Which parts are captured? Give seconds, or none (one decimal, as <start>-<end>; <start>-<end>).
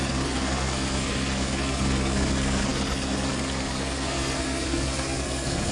none